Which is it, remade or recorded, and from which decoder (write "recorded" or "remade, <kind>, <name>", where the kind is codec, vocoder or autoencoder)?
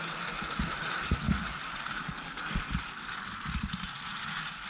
recorded